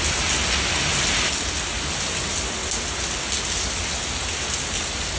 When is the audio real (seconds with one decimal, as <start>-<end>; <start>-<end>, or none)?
0.0-5.2